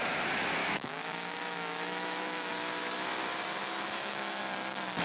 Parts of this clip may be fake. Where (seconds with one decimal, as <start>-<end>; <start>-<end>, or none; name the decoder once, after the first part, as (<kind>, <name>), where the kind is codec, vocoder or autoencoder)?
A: 0.6-2.5 (autoencoder, DAC-VAE); 3.6-4.4